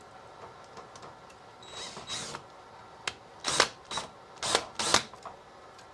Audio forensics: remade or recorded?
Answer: recorded